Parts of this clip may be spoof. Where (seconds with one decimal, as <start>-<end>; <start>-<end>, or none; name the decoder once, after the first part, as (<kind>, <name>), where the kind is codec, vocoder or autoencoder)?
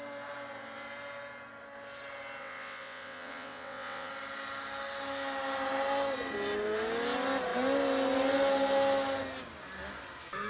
2.4-4.1 (vocoder, WaveNeXt)